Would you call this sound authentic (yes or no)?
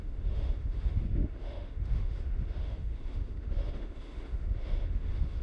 no